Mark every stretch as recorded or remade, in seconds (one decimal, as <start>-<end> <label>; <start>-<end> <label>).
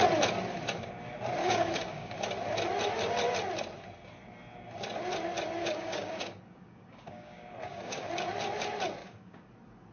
0.0-1.4 recorded; 1.4-2.2 remade; 2.2-5.6 recorded; 5.6-8.1 remade; 8.1-9.0 recorded; 9.0-9.5 remade; 9.5-9.9 recorded